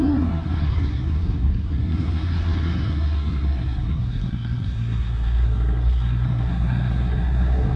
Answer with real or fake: fake